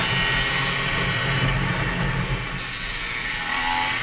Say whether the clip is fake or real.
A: real